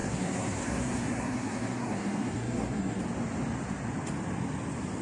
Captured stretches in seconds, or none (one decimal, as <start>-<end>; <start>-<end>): 3.0-5.0